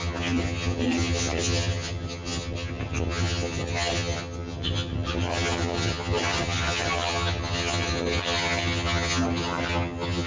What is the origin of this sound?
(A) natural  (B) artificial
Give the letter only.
B